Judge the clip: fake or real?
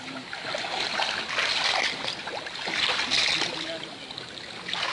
real